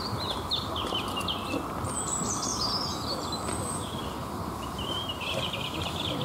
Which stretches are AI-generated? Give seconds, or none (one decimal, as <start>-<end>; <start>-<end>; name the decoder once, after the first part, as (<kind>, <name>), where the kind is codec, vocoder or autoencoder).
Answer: none